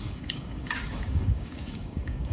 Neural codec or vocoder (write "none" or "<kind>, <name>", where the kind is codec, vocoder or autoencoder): codec, DAC